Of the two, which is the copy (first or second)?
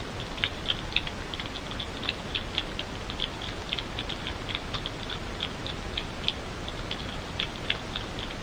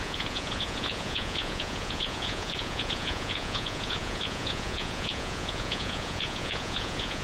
second